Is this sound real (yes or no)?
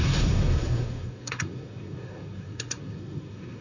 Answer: no